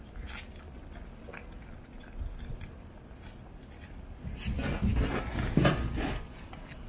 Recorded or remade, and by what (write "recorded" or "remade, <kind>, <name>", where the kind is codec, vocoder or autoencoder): recorded